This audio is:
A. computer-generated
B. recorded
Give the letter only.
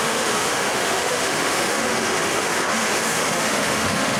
A